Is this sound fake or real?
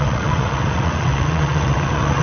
fake